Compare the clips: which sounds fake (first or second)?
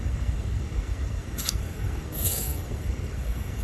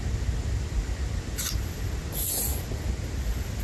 first